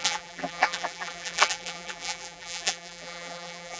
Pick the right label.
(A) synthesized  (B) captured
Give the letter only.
A